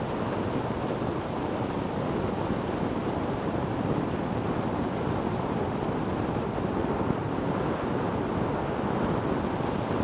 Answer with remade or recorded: recorded